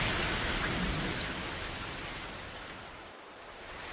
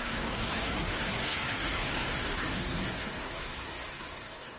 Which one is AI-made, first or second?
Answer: second